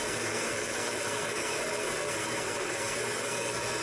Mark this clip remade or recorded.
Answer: remade